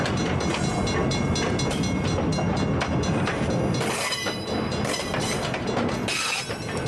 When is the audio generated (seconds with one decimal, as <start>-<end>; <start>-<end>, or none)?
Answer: none